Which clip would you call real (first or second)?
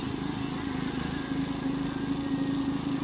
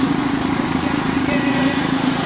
first